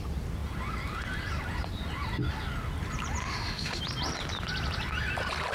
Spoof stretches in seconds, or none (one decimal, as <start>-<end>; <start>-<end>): 3.2-3.8